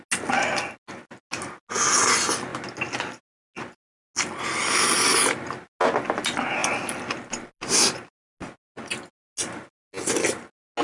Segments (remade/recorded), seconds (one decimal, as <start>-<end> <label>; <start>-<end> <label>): 0.0-10.8 recorded